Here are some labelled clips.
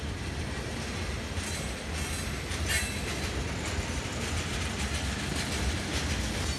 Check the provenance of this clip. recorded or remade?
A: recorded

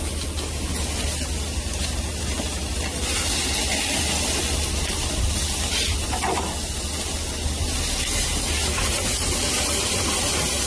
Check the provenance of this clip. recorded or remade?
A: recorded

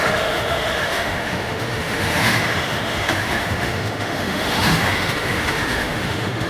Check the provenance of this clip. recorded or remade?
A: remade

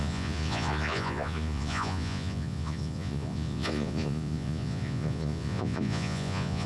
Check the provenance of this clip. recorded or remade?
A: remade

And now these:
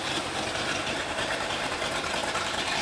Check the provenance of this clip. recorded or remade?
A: remade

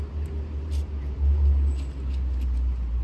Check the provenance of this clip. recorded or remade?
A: recorded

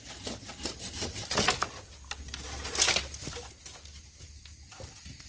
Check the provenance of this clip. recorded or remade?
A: recorded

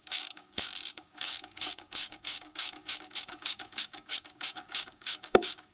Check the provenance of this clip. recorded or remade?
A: remade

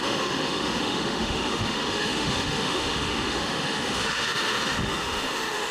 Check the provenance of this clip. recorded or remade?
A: remade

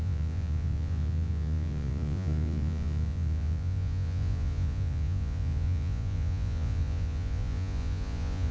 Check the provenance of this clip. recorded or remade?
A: remade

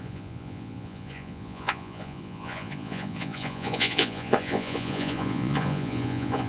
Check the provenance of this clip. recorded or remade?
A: remade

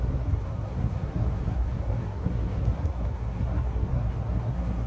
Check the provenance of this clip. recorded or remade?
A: remade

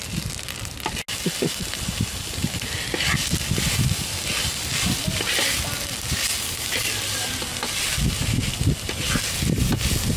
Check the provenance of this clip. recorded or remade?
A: recorded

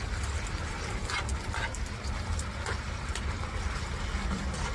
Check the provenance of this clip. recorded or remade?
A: recorded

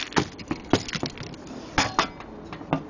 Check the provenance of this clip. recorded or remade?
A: recorded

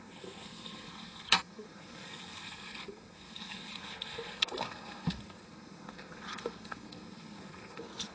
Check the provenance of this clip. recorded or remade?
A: remade